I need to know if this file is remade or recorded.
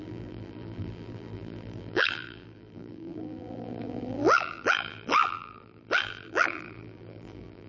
remade